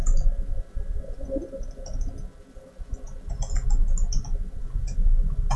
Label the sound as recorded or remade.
recorded